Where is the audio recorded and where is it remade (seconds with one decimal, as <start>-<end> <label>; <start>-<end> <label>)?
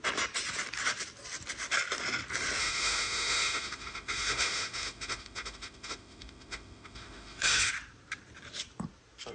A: 0.0-2.6 recorded; 2.6-7.7 remade; 7.7-9.3 recorded